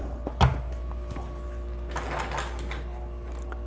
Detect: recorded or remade recorded